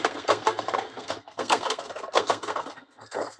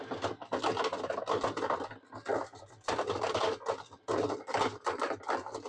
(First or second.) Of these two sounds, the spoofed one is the first